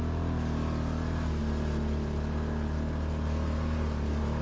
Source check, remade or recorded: recorded